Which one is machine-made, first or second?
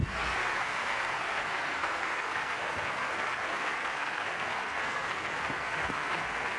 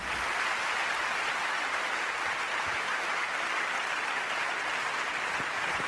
first